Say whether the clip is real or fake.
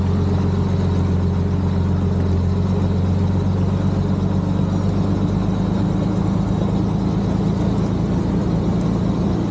real